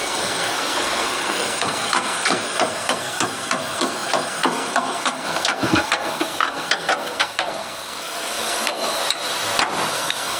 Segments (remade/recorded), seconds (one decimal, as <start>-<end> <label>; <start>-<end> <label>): 0.0-9.0 remade; 9.0-9.9 recorded; 9.9-10.4 remade